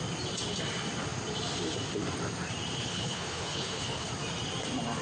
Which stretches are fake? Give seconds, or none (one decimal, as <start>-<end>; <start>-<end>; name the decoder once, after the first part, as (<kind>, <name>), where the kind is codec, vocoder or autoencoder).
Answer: 2.8-4.1 (codec, HILCodec)